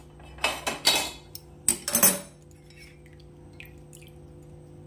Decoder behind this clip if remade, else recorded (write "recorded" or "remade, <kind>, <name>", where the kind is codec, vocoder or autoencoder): recorded